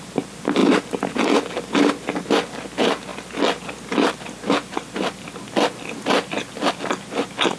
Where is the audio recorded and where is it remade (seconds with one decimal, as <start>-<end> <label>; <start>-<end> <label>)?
0.0-7.6 recorded

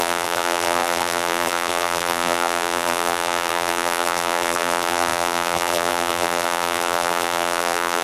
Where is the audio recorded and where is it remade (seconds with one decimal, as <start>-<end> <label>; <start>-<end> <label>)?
0.0-8.0 remade